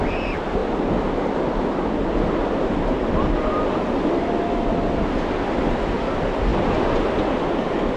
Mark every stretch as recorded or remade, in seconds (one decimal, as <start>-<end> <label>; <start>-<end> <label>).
0.0-8.0 recorded